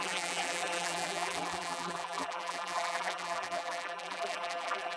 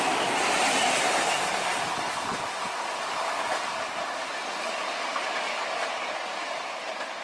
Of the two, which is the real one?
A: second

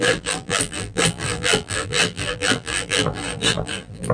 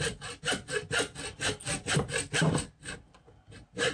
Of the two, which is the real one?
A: second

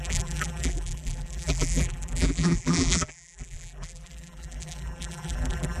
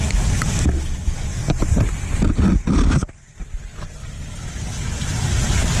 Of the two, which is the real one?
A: second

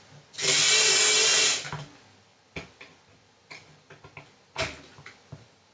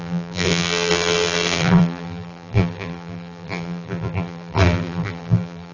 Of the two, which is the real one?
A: first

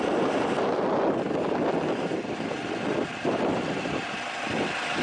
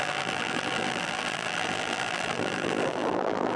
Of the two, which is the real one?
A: first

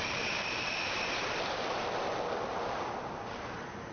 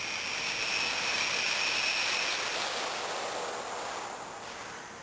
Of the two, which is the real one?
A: second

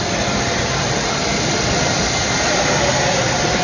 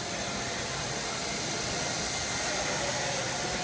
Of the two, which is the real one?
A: second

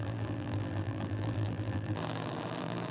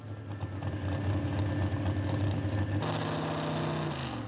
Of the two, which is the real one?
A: second